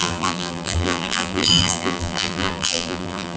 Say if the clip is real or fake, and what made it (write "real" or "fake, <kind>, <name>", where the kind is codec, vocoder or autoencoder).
fake, vocoder, BigVGAN v2